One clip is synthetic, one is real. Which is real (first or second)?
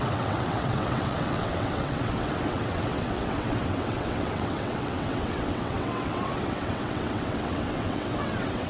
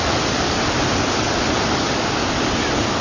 second